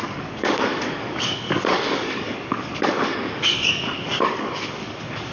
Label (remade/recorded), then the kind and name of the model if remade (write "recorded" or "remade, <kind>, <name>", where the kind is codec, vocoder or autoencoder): remade, codec, DAC